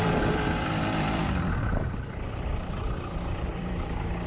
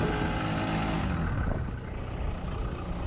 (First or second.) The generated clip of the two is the first